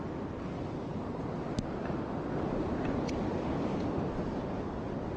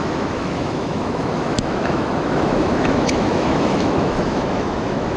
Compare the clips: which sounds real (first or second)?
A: first